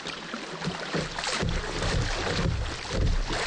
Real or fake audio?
real